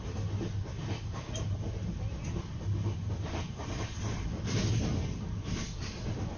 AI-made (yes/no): no